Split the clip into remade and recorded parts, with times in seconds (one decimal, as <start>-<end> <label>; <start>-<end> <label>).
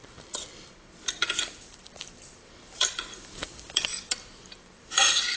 0.0-5.4 remade